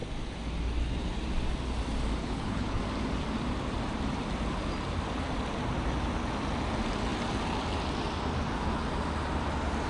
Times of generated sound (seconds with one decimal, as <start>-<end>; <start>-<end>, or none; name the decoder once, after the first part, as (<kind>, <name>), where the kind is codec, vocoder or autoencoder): 2.2-2.8 (codec, HILCodec)